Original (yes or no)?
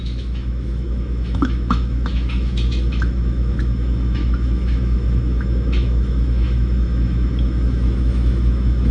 no